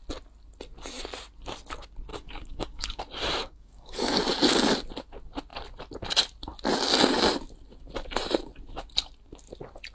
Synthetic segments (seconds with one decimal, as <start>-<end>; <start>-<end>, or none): 2.1-3.0; 3.4-4.2